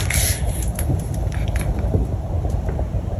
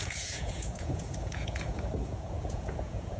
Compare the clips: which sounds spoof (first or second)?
second